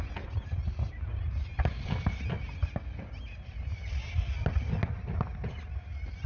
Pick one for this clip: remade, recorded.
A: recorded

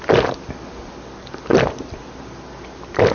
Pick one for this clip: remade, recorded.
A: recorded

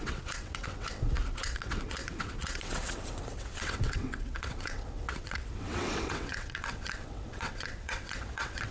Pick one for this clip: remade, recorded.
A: remade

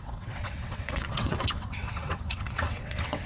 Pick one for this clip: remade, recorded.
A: remade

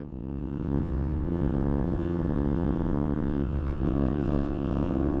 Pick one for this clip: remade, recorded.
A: remade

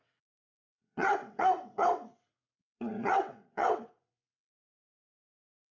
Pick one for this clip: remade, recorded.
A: remade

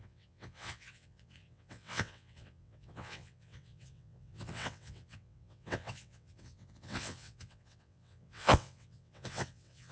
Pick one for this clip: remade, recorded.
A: remade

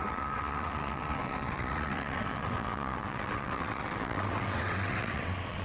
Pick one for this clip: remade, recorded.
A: remade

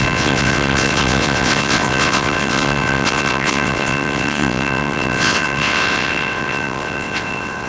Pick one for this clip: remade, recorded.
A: remade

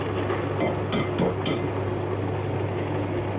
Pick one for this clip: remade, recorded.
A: recorded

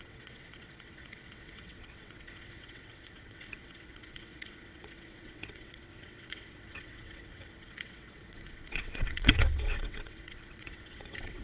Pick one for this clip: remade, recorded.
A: remade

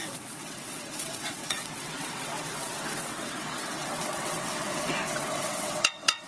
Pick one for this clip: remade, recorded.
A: remade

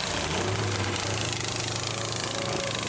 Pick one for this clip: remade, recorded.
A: recorded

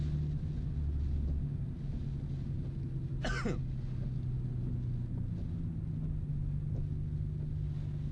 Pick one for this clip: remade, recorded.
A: recorded